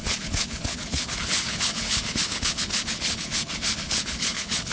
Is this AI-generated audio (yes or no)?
yes